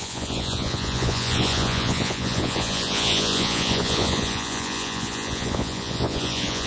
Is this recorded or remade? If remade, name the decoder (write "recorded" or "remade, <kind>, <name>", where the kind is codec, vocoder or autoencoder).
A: remade, vocoder, Vocos